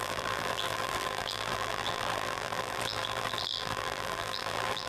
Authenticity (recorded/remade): remade